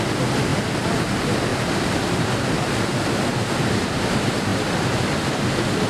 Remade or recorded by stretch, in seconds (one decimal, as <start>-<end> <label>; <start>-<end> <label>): 0.0-5.9 recorded